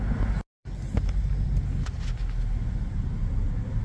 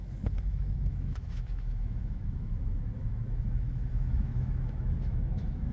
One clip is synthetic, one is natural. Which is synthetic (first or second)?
second